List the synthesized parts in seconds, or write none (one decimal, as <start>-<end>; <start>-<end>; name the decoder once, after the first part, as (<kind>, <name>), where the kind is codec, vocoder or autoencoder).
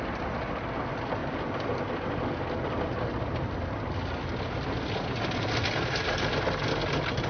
none